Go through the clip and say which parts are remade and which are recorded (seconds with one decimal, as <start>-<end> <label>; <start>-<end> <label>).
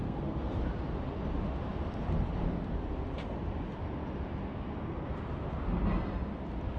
0.0-0.5 remade; 0.5-4.4 recorded; 4.4-5.2 remade; 5.2-6.8 recorded